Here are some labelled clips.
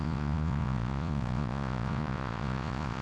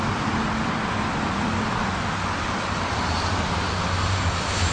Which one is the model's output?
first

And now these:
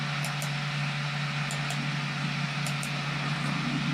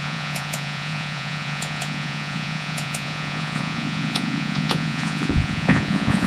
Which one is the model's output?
second